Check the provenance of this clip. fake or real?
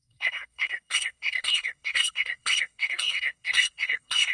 fake